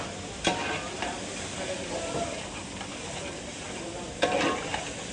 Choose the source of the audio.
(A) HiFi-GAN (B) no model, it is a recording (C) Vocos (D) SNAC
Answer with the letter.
B